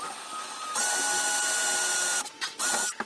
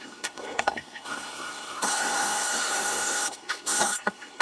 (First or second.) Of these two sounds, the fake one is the second